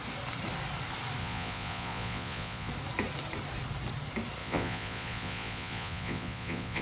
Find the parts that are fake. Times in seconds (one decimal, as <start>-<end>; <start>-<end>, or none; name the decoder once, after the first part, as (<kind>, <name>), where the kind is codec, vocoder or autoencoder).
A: 1.2-2.7 (vocoder, Vocos); 4.4-6.8